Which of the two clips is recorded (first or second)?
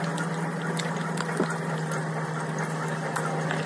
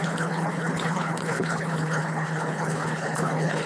first